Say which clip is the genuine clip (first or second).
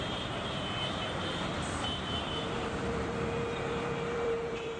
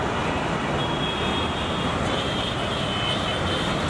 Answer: second